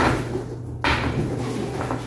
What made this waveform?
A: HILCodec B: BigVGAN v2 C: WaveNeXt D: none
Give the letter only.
D